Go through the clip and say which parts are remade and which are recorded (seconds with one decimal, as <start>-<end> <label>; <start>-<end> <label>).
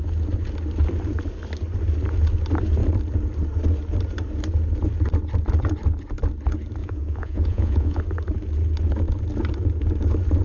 0.0-6.8 recorded; 6.8-8.0 remade; 8.0-10.4 recorded